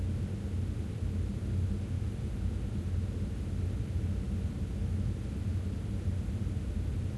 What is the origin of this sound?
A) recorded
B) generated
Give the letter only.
A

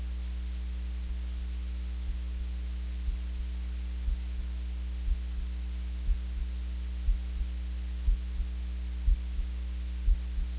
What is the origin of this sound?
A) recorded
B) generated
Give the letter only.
A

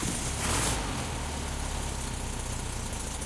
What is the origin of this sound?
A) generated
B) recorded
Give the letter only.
B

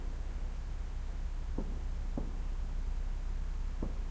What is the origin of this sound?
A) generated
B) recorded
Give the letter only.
B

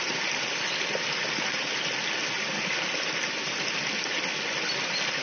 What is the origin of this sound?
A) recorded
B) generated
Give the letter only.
A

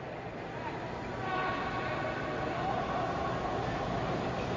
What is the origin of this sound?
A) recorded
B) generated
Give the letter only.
A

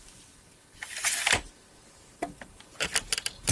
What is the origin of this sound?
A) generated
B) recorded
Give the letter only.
B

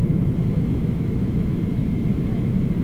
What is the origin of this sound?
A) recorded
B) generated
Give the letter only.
B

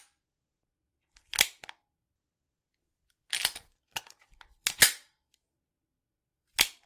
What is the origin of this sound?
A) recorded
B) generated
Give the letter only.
B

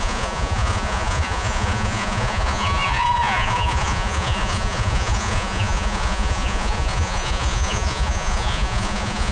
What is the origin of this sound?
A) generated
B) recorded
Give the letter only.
A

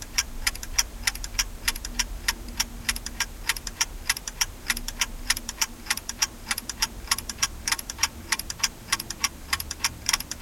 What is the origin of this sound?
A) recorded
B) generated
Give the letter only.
B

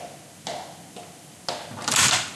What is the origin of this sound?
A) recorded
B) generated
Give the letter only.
A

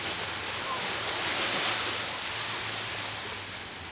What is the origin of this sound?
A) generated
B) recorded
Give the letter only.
B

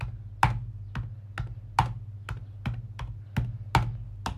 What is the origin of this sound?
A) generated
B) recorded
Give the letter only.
B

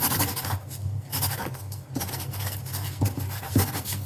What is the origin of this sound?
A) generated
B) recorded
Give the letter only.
A